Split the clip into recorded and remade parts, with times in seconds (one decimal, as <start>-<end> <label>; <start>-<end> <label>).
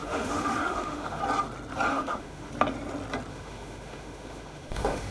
0.0-1.2 remade; 1.2-1.9 recorded; 1.9-2.5 remade; 2.5-3.3 recorded; 3.3-5.1 remade